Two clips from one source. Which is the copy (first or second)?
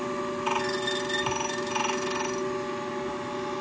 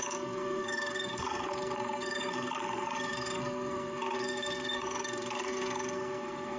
second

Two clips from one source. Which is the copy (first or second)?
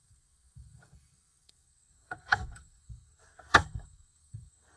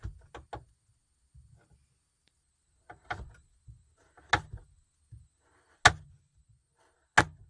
first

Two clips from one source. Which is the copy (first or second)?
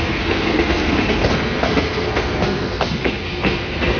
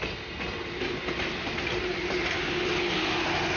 first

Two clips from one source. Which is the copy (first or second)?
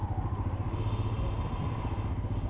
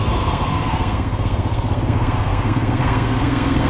second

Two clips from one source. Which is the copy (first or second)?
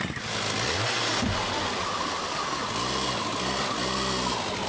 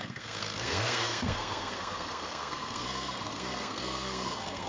second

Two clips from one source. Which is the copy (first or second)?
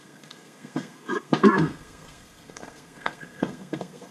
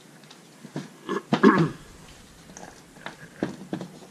first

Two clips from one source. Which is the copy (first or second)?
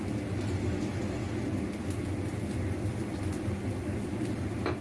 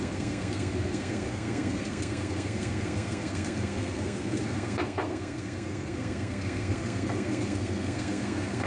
second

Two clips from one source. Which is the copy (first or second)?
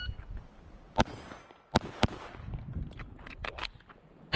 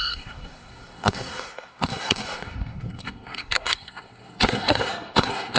second